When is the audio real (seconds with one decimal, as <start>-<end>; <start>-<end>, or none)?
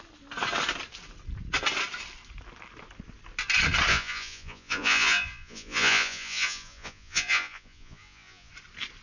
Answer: 0.0-3.9; 8.5-9.0